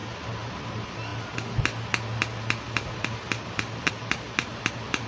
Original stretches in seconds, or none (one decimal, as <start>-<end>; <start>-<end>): 0.0-5.1